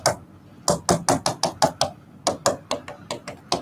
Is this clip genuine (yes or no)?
yes